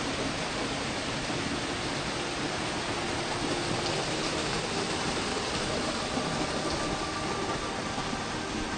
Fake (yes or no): no